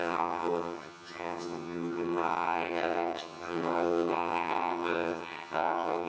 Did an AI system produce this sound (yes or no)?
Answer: yes